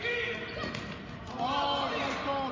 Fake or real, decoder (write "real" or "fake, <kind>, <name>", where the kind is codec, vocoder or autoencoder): real